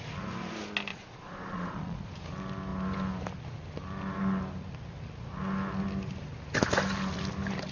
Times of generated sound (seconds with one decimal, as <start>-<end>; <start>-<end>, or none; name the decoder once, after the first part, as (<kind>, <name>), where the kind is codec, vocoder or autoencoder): 0.9-2.1 (vocoder, Vocos)